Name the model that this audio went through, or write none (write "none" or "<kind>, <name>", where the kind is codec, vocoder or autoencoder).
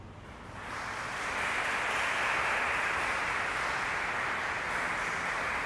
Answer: none